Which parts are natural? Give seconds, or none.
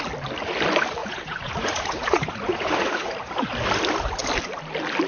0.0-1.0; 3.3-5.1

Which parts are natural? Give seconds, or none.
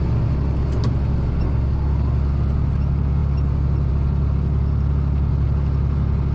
0.0-6.3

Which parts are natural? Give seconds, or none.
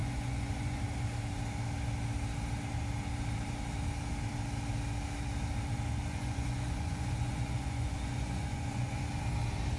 0.8-6.1; 9.0-9.8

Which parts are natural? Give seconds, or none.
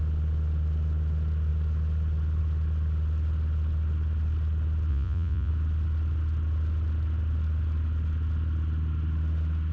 0.0-4.9; 5.5-9.7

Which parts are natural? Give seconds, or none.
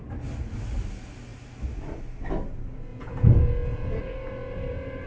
0.0-2.9; 4.0-5.1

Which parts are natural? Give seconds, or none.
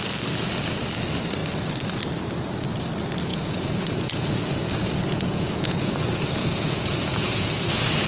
0.0-3.3; 5.9-6.4; 7.4-8.1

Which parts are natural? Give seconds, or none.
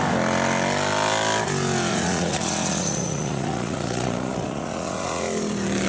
0.0-1.9; 5.2-5.9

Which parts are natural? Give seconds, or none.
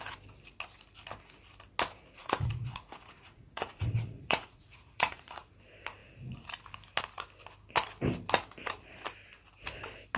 0.0-2.2; 5.5-10.2